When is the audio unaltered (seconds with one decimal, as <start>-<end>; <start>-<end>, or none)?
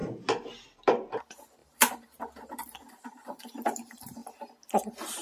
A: 0.0-1.6; 2.2-2.6; 3.4-5.2